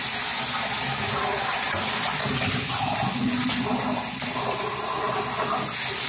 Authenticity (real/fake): real